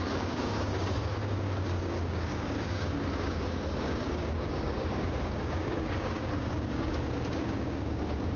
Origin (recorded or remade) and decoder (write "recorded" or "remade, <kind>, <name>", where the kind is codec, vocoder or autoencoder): remade, codec, DAC